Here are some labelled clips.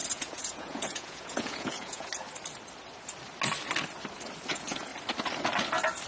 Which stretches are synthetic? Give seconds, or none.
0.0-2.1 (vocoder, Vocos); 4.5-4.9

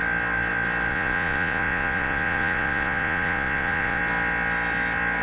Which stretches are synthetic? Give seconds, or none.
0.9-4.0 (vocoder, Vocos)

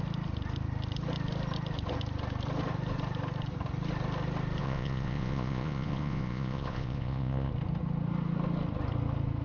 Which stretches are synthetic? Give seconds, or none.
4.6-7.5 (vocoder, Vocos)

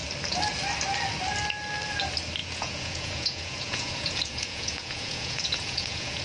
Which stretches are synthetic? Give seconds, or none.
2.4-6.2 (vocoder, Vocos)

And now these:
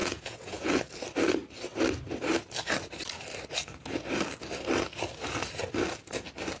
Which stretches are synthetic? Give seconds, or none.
0.0-0.8 (vocoder, Vocos)